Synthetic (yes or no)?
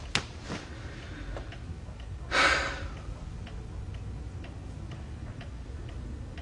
no